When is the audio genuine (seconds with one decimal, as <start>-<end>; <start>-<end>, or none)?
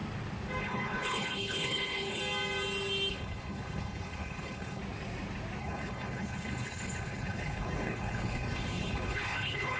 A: 0.0-0.6; 2.2-3.1; 4.8-5.6